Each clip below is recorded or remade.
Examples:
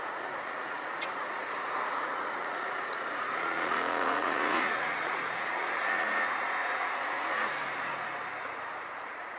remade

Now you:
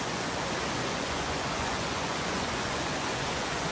remade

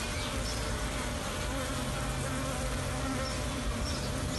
recorded